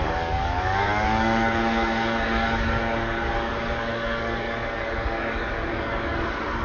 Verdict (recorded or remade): remade